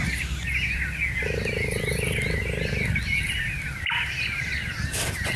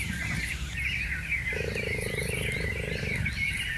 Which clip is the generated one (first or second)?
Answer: second